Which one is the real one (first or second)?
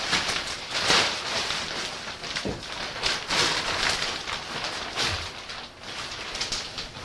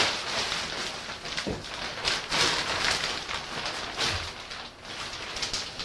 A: second